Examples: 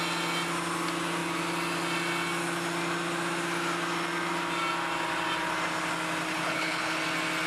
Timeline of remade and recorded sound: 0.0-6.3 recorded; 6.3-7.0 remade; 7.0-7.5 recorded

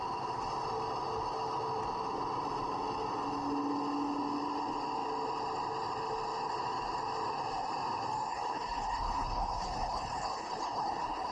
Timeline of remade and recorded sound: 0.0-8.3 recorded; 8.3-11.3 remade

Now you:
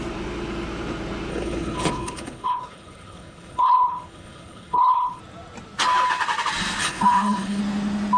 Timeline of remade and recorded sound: 0.0-1.3 recorded; 1.3-5.2 remade; 5.2-6.8 recorded; 6.8-7.6 remade; 7.6-8.2 recorded

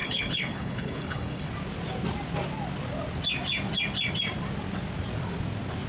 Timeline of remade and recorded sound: 0.0-1.5 remade; 1.5-5.9 recorded

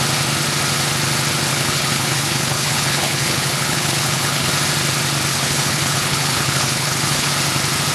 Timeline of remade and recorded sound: 0.0-1.5 recorded; 1.5-4.5 remade; 4.5-5.3 recorded; 5.3-7.3 remade; 7.3-7.9 recorded